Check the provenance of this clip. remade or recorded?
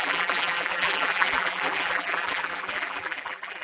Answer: remade